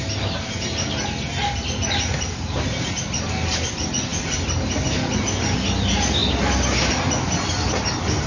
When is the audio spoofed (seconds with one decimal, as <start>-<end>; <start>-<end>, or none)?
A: none

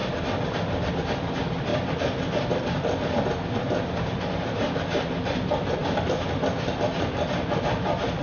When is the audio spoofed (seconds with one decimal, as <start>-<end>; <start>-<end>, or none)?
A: none

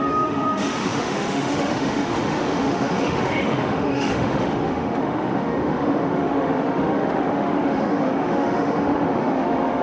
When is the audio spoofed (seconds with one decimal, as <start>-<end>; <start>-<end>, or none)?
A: 0.0-9.8

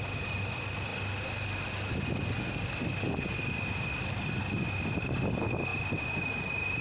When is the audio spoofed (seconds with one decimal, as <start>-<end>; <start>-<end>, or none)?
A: none

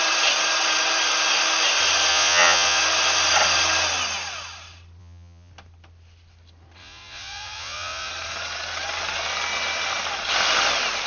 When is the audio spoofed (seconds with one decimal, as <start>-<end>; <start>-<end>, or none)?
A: 2.1-2.8; 5.0-5.5; 6.8-8.1

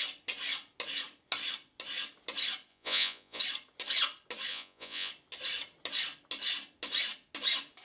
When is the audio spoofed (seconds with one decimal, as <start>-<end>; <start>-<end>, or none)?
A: 2.7-3.4; 4.5-5.1